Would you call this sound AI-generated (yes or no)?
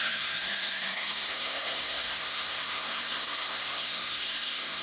yes